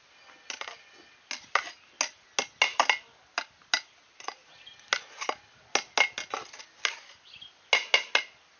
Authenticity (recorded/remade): recorded